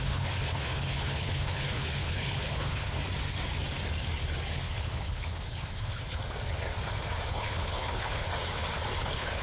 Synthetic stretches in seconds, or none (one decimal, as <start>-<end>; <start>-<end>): 0.0-3.0; 4.5-6.2; 7.3-8.3; 9.0-9.4